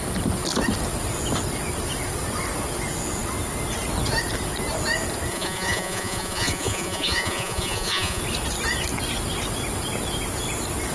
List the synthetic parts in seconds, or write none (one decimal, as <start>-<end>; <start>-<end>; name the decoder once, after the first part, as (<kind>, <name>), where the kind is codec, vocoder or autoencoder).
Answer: 5.3-8.2 (vocoder, Vocos)